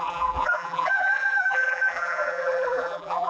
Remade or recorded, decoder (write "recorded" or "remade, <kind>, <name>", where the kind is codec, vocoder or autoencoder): remade, vocoder, BigVGAN v2